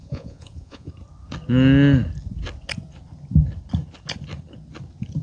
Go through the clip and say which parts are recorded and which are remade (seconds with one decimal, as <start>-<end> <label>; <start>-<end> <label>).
0.0-0.9 remade; 0.9-5.2 recorded